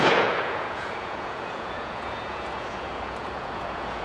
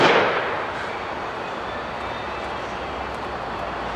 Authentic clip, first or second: second